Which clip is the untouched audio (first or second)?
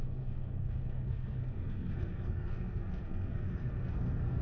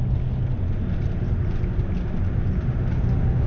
second